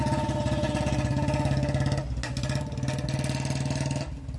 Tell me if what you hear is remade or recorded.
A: recorded